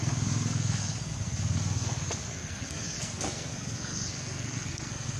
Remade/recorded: remade